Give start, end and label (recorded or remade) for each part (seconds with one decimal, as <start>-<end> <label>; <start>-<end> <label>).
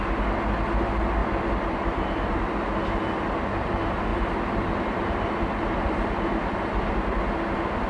0.0-1.2 recorded; 1.2-2.6 remade; 2.6-4.1 recorded; 4.1-6.9 remade; 6.9-7.9 recorded